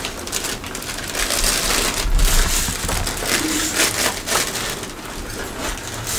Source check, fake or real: real